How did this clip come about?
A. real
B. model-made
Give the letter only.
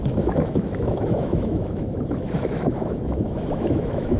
B